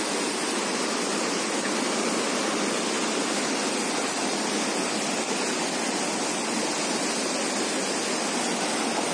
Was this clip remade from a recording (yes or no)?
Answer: no